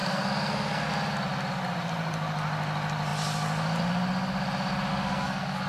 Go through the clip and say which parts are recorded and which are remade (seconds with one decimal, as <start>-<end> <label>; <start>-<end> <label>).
0.0-0.9 remade; 0.9-4.9 recorded; 4.9-5.7 remade